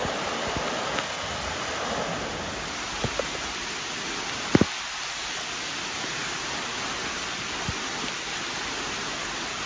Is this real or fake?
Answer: real